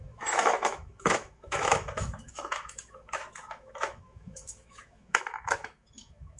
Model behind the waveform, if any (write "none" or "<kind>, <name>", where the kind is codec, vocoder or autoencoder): autoencoder, DAC-VAE